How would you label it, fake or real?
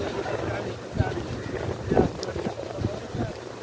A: real